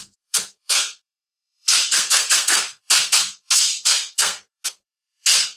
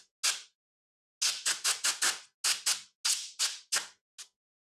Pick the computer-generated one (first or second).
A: first